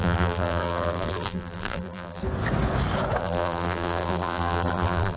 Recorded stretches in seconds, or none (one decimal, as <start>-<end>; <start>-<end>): 2.2-3.2